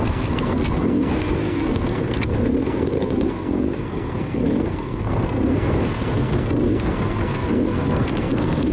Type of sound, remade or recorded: remade